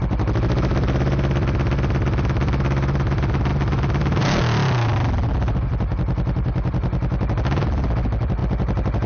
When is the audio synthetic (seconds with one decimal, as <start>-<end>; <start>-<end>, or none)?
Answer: none